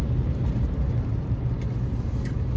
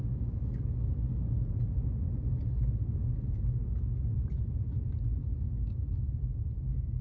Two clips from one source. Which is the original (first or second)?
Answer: second